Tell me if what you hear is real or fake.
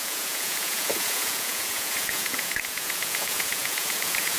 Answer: fake